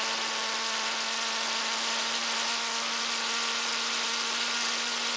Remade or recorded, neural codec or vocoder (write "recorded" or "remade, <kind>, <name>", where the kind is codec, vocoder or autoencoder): recorded